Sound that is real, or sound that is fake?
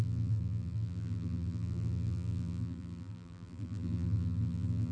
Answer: fake